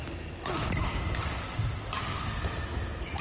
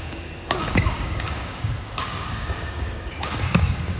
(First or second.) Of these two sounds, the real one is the first